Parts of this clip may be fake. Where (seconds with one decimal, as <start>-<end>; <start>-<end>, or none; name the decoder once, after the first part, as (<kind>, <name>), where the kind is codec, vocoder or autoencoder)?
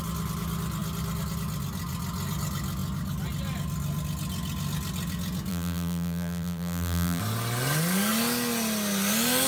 5.5-7.2 (vocoder, BigVGAN v2)